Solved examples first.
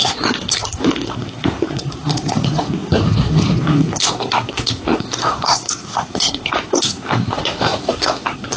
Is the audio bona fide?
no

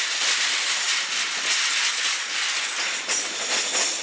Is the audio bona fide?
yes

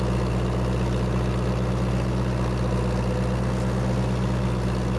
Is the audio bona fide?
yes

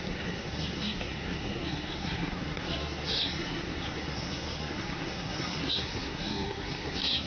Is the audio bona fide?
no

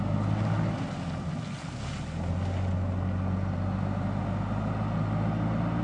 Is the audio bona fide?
yes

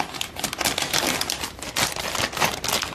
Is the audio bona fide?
yes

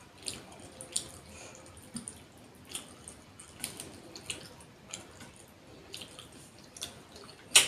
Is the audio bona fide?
yes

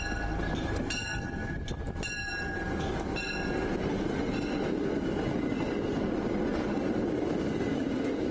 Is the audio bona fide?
yes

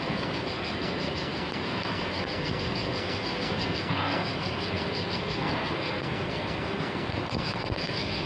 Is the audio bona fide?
no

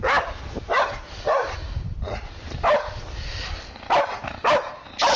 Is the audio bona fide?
yes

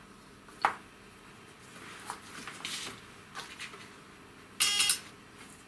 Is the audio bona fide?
yes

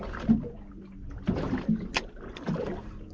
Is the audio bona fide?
yes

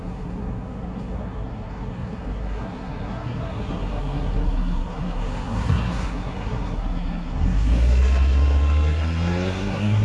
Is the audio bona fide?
no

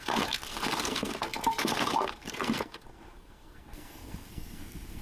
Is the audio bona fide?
no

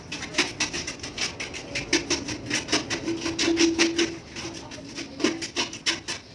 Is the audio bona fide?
yes